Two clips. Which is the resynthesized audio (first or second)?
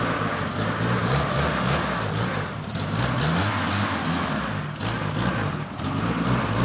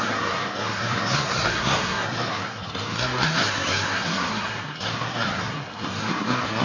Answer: second